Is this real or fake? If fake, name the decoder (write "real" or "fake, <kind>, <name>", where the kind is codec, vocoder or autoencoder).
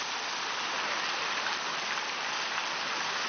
real